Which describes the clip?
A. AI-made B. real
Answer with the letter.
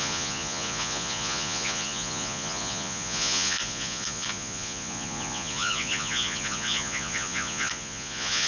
A